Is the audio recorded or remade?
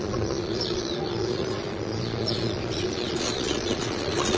remade